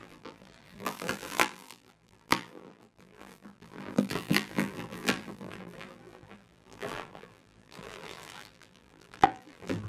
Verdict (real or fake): fake